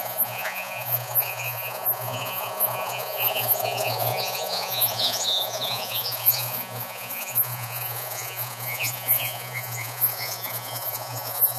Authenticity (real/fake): fake